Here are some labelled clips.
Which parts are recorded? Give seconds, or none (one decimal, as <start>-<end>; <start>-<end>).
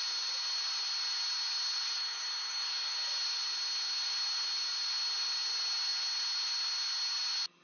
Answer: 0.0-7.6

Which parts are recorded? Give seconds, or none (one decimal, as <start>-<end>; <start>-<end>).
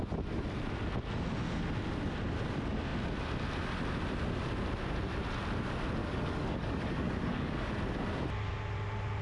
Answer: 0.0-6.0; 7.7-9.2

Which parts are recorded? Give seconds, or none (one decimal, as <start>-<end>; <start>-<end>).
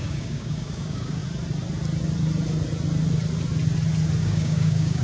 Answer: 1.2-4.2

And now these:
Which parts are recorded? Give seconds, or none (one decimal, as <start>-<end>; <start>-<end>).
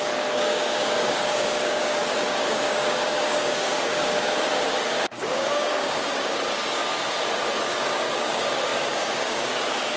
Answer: 6.8-7.6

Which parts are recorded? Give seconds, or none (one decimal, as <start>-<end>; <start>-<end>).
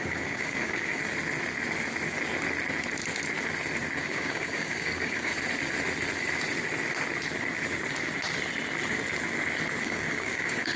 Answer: 1.0-4.0; 5.3-9.8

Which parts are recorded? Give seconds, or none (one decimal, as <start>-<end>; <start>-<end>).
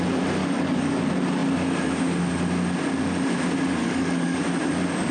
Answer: 0.0-0.4; 1.0-3.8; 4.4-5.1